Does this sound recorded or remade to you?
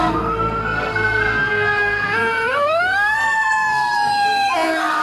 remade